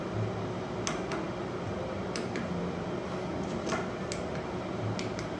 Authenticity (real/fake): real